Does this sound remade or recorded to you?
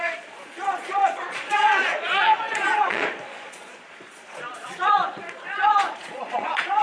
remade